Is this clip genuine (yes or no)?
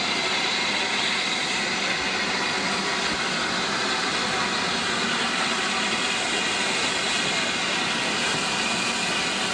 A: yes